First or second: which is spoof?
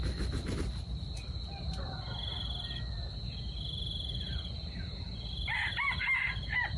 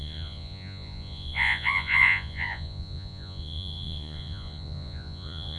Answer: second